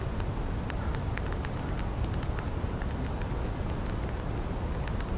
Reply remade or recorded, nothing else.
recorded